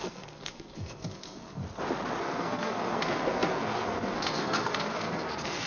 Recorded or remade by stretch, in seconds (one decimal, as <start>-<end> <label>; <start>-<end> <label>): 0.0-1.6 remade; 1.6-2.2 recorded; 2.2-5.7 remade